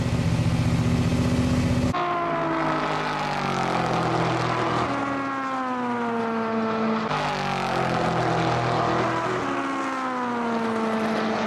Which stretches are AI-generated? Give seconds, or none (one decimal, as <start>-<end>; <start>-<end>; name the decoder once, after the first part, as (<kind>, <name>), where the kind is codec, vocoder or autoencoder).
none